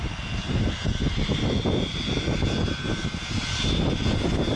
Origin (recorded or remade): recorded